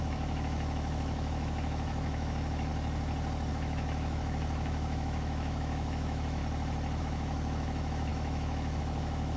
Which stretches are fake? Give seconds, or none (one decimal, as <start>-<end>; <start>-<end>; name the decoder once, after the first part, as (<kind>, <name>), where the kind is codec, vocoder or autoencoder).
0.0-2.7 (autoencoder, DAC-VAE); 3.5-6.4; 7.0-9.4